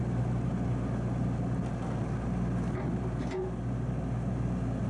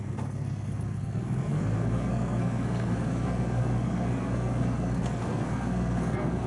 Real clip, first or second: first